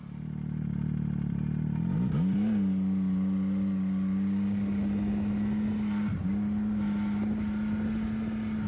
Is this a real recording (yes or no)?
yes